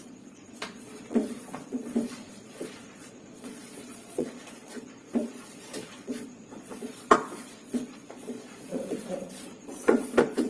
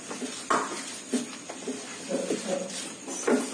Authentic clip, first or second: second